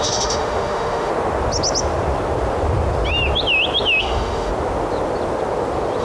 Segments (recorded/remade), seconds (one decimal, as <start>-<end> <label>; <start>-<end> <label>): 0.0-1.1 remade; 1.1-4.0 recorded; 4.0-4.5 remade; 4.5-6.0 recorded